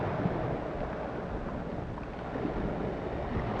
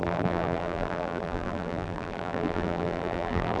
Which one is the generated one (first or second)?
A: second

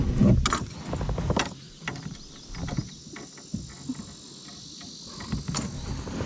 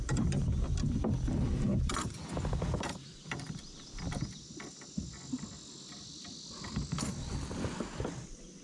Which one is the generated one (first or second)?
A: second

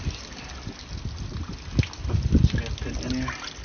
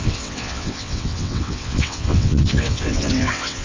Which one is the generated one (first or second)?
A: second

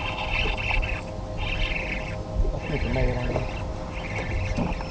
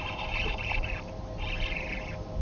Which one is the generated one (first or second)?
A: second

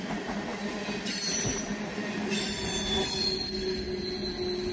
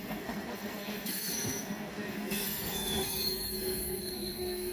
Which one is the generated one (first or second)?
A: second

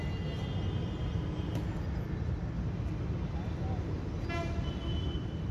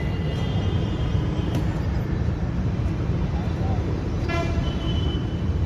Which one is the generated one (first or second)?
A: second